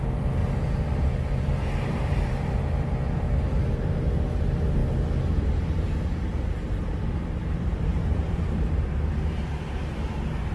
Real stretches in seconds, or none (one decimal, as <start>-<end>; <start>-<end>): 0.0-0.4; 4.1-7.4; 9.9-10.5